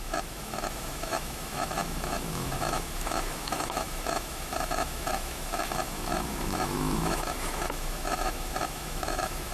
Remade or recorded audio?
remade